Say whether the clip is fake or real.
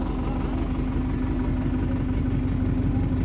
real